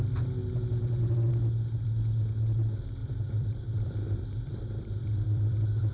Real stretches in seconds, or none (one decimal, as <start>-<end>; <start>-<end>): 0.0-3.0